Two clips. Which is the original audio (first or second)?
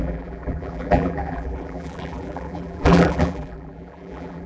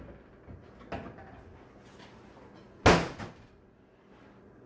second